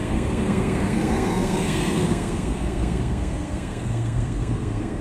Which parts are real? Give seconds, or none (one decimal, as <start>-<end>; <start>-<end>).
none